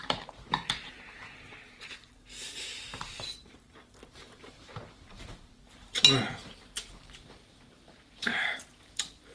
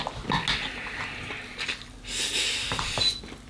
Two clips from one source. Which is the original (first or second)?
second